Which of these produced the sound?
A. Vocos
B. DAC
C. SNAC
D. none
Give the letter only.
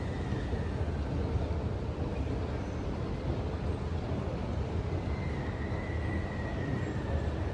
D